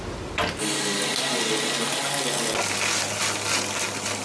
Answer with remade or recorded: recorded